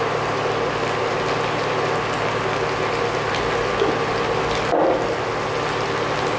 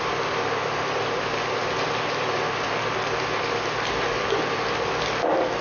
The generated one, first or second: second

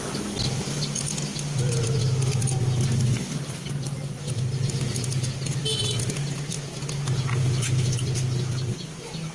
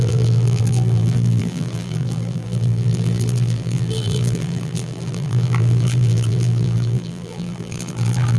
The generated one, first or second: second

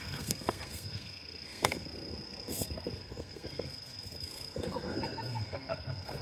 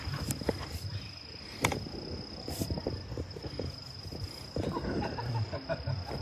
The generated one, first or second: first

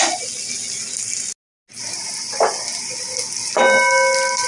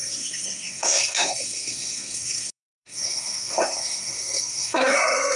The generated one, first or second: second